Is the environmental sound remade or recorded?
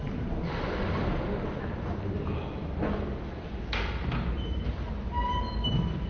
recorded